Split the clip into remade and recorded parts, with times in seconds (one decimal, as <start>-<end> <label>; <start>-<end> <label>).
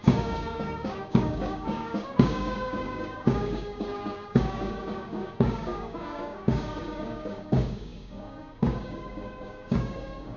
0.0-10.4 remade